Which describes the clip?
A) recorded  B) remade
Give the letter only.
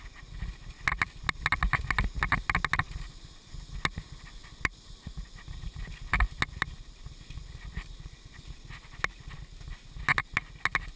A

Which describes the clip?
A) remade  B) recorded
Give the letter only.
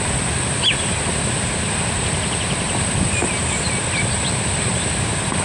B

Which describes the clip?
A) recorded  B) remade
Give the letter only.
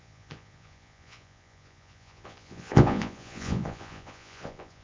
B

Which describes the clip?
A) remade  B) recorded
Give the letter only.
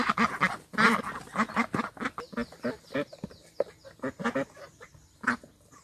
B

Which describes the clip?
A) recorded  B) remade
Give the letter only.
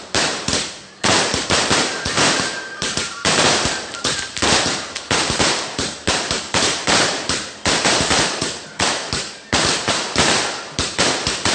B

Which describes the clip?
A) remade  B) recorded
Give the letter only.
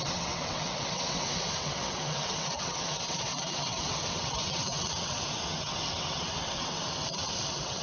A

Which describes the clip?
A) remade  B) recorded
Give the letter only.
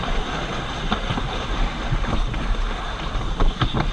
B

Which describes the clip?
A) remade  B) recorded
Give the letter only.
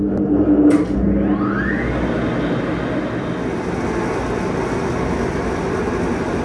B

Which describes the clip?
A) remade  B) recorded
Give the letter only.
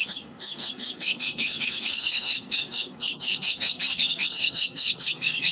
A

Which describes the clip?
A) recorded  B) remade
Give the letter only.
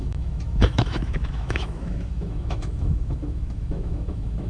B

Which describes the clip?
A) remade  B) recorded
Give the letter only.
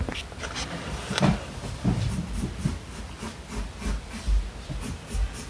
B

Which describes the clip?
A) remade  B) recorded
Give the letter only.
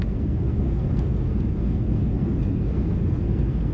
A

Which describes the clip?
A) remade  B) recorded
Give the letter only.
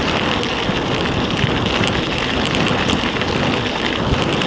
B